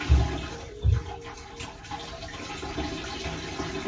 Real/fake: real